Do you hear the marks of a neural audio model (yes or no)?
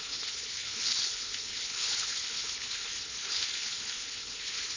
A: yes